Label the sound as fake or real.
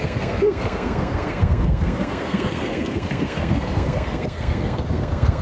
fake